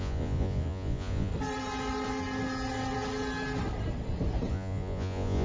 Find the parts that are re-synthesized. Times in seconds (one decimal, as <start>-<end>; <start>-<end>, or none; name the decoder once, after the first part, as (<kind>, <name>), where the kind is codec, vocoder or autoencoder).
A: 0.0-1.3 (vocoder, Vocos); 4.5-5.4